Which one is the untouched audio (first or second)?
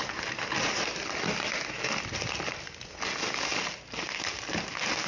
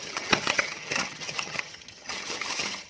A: first